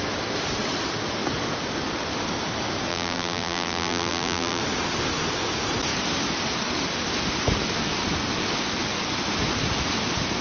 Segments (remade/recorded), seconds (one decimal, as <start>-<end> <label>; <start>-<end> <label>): 0.0-2.9 recorded; 2.9-4.6 remade; 4.6-10.4 recorded

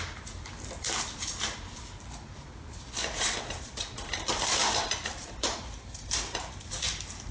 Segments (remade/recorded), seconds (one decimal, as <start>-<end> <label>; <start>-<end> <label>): 0.0-3.0 recorded; 3.0-3.9 remade; 3.9-4.6 recorded; 4.6-7.3 remade

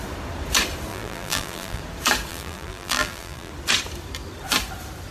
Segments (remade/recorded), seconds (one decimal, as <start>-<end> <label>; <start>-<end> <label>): 0.0-0.9 recorded; 0.9-1.8 remade; 1.8-2.3 recorded; 2.3-3.5 remade; 3.5-5.1 recorded